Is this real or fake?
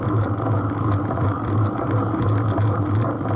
real